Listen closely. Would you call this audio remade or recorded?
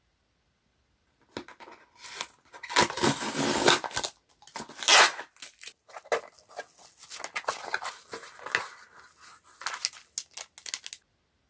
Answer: recorded